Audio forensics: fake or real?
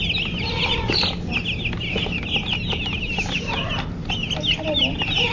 real